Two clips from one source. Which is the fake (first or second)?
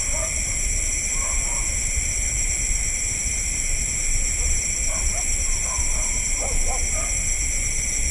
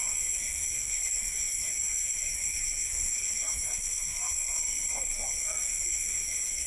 second